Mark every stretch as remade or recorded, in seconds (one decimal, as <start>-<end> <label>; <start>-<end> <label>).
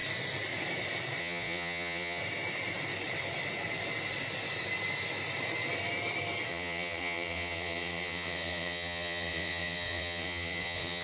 0.0-1.2 recorded; 1.2-2.2 remade; 2.2-6.5 recorded; 6.5-11.0 remade